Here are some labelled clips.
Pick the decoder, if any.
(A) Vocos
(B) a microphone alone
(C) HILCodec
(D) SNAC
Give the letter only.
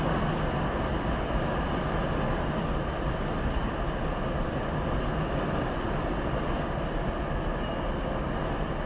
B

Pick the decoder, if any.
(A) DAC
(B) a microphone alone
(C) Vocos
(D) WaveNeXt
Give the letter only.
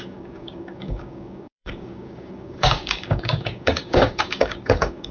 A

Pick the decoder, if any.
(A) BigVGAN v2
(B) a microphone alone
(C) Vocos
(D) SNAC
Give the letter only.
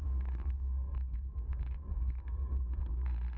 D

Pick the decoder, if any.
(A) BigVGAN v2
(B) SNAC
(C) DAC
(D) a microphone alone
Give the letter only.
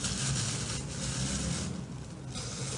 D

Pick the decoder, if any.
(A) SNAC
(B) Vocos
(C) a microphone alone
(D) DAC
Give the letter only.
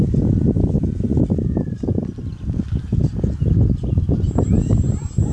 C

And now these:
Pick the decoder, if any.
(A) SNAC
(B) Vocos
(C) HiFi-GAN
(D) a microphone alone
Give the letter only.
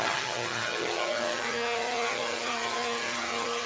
C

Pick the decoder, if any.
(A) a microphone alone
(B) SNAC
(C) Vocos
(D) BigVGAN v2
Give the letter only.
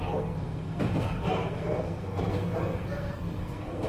B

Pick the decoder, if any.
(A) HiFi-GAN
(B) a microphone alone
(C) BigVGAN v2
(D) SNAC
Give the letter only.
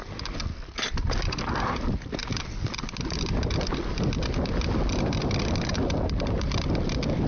B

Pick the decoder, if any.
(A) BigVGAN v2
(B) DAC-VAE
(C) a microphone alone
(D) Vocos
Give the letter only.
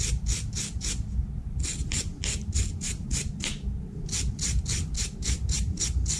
C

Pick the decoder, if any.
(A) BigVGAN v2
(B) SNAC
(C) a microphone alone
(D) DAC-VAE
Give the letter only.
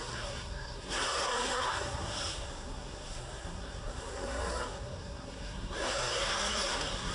B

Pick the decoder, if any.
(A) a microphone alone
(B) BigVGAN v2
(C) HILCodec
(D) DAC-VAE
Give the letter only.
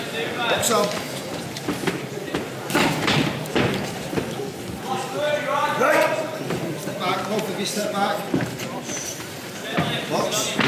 B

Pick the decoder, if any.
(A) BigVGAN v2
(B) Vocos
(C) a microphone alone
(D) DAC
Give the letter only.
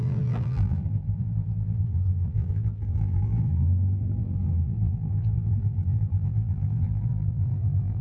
A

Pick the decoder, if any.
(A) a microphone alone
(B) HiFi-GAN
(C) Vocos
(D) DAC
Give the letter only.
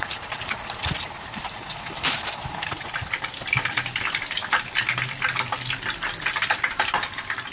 A